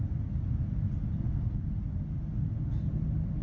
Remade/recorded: recorded